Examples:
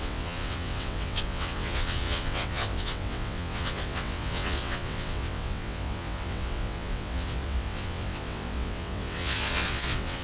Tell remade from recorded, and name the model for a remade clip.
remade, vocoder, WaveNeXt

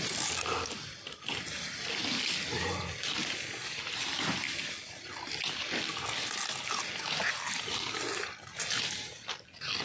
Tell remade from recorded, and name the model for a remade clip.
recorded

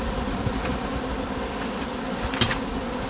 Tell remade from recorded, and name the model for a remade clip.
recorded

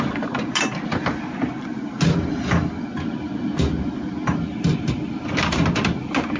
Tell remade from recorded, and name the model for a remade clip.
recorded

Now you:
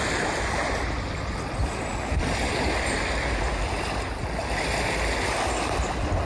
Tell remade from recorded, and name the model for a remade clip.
recorded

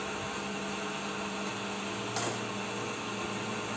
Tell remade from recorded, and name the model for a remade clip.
recorded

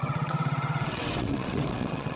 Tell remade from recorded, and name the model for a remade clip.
remade, vocoder, WaveNeXt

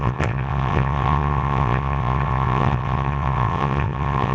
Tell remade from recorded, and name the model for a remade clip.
remade, vocoder, WaveNeXt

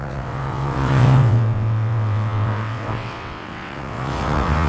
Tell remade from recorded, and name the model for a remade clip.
remade, vocoder, WaveNeXt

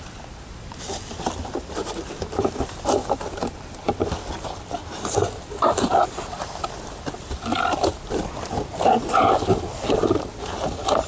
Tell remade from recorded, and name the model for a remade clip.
recorded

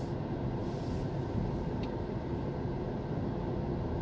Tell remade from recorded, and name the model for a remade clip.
recorded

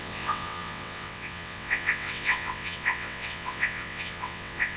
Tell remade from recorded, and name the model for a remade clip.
remade, vocoder, WaveNeXt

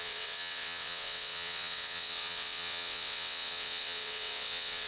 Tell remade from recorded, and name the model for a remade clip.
remade, vocoder, WaveNeXt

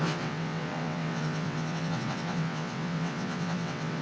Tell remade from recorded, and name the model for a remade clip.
remade, vocoder, WaveNeXt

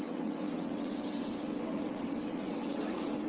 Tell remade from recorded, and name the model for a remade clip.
remade, vocoder, WaveNeXt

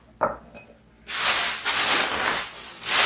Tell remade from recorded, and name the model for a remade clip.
recorded